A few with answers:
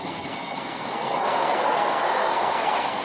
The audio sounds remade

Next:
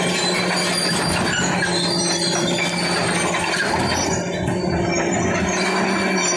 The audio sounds recorded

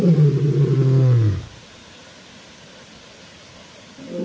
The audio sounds recorded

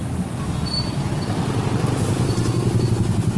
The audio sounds recorded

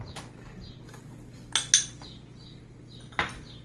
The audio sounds recorded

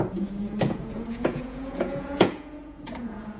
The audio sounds remade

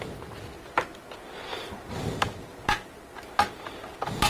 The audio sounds recorded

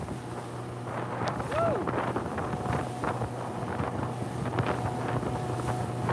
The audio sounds recorded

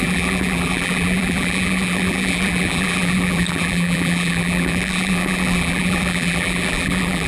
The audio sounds remade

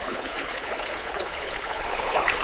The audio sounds remade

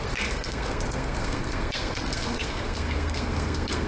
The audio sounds remade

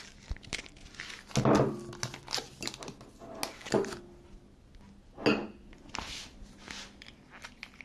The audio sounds recorded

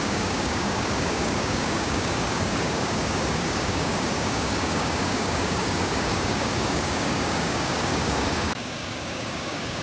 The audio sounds remade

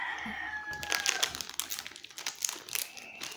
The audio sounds recorded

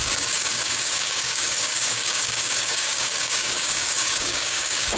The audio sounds remade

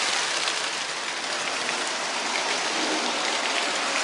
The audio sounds recorded